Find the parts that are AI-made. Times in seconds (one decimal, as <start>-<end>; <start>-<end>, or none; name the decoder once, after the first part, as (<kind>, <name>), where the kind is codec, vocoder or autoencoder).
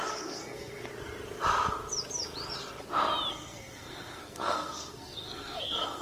0.0-0.9 (codec, SNAC); 3.3-6.0